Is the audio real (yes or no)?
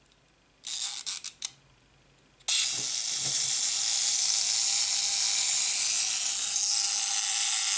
yes